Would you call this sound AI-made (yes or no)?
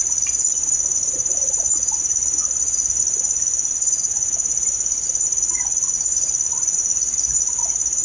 no